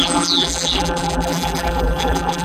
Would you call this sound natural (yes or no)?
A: no